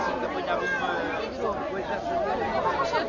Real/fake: real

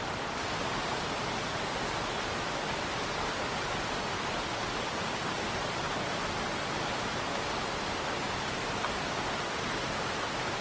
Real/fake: real